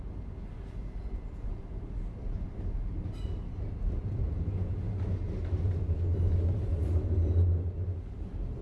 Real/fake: real